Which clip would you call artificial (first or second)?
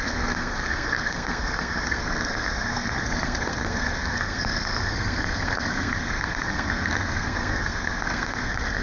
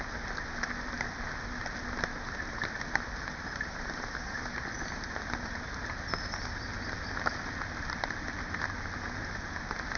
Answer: first